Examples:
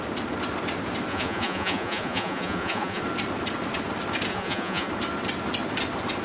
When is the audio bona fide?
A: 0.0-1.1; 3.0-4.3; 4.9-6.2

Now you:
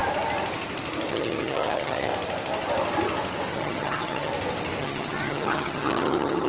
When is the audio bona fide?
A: 0.0-1.1; 2.1-3.5; 4.3-4.8

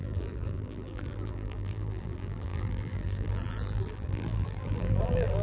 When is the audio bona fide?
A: none

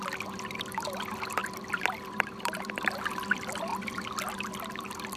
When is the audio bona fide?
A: 0.0-1.4; 2.7-5.2

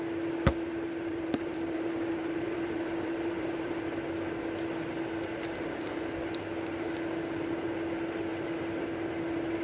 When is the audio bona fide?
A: 0.0-1.1; 3.9-9.6

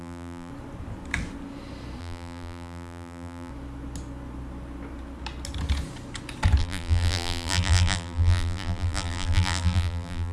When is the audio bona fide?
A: 0.5-2.0; 3.5-6.6

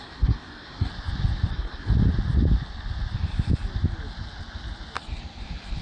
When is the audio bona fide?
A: 0.9-1.5; 1.9-5.8